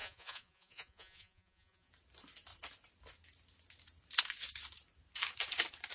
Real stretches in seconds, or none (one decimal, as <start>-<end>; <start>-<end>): 1.9-5.9